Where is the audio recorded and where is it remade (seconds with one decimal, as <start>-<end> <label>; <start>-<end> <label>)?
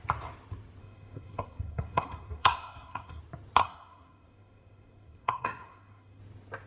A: 0.0-0.8 recorded; 0.8-3.2 remade; 3.2-3.6 recorded; 3.6-6.2 remade; 6.2-6.7 recorded